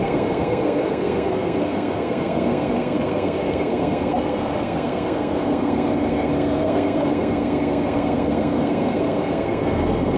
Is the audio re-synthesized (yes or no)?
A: yes